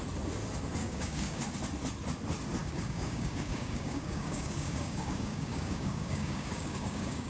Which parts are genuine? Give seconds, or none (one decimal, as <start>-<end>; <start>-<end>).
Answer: 0.0-0.8; 1.4-2.6